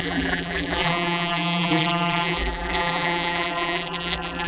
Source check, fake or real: fake